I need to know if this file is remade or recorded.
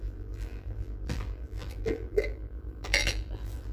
remade